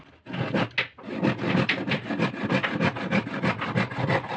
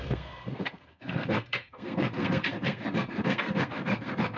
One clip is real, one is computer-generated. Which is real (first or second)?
first